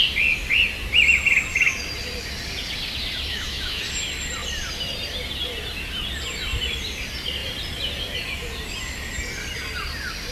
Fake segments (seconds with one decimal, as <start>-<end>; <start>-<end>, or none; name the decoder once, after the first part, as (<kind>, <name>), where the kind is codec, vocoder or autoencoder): 3.3-3.8 (autoencoder, DAC-VAE)